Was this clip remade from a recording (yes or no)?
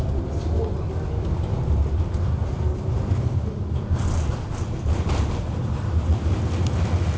yes